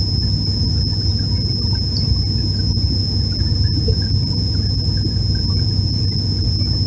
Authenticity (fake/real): real